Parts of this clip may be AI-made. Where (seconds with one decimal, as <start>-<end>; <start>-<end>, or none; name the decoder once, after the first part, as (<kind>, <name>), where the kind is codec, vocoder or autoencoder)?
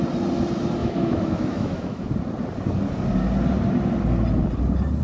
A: 0.8-2.1 (autoencoder, DAC-VAE)